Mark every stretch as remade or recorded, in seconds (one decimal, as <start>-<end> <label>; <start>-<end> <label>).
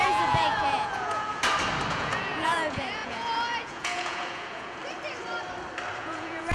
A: 0.0-1.3 remade; 1.3-1.9 recorded; 1.9-4.8 remade; 4.8-6.0 recorded; 6.0-6.5 remade